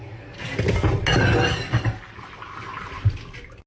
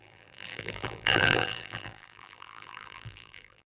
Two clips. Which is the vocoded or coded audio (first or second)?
second